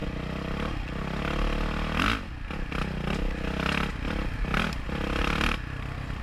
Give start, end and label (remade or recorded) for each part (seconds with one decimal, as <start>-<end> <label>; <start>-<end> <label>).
0.0-6.2 recorded